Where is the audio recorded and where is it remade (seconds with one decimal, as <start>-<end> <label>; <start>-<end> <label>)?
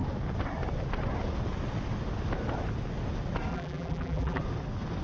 0.0-3.5 recorded; 3.5-4.4 remade; 4.4-5.0 recorded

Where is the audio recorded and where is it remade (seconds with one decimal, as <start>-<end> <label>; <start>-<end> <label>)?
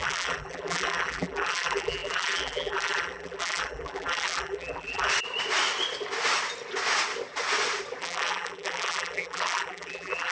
0.0-5.1 remade; 5.1-8.0 recorded; 8.0-10.3 remade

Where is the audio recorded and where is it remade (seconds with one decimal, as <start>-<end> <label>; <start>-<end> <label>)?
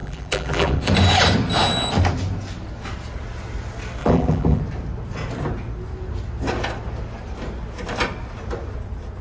0.0-0.9 remade; 0.9-4.0 recorded; 4.0-4.6 remade; 4.6-9.2 recorded